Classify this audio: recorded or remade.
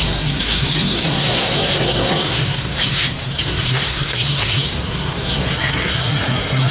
remade